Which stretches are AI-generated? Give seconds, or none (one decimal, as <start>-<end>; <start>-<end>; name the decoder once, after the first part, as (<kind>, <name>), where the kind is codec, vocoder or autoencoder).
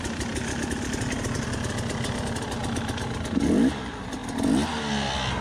none